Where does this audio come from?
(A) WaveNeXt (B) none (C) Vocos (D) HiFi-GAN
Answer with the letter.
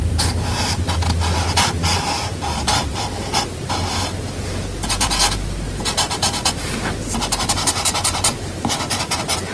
B